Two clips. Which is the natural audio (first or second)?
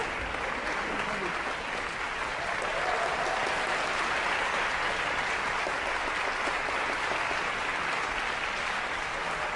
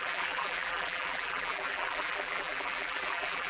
first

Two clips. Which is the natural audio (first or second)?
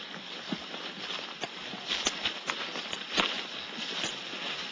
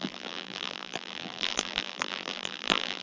first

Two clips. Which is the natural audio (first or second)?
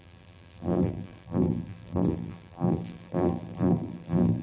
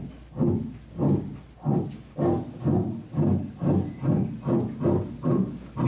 second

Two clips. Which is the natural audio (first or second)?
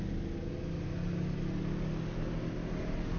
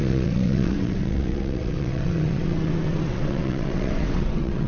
first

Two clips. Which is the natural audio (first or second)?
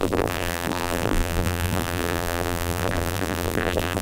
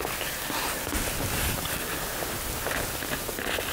second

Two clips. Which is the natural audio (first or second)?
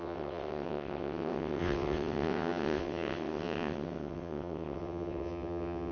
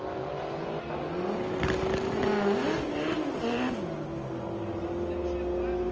second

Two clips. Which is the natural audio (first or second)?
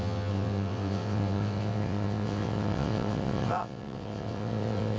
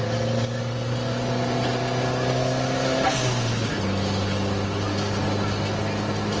second